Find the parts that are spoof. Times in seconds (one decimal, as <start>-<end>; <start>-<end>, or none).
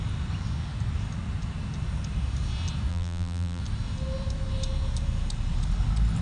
2.9-3.6